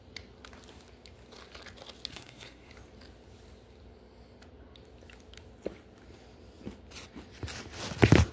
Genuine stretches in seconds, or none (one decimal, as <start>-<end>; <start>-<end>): 0.0-2.1; 2.7-8.3